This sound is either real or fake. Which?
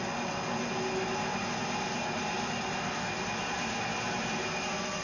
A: real